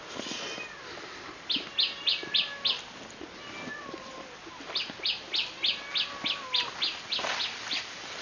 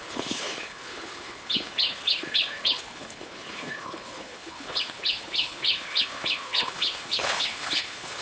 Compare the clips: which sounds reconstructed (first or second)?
second